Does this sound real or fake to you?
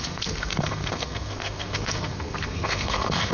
fake